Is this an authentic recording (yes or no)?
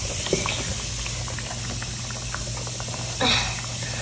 yes